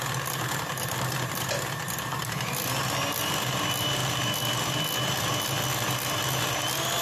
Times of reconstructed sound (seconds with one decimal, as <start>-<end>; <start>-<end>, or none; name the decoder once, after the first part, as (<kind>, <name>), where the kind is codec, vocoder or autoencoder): none